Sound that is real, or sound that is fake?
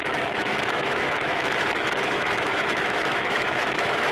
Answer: fake